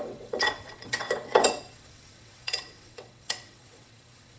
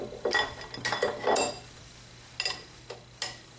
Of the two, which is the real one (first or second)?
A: second